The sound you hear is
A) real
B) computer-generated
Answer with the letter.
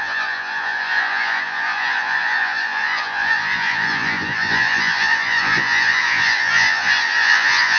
B